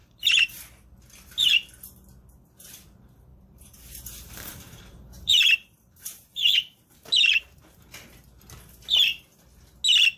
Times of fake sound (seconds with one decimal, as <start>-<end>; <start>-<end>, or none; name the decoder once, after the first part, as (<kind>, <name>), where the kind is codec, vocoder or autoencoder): 0.0-0.6 (vocoder, BigVGAN v2); 3.3-7.9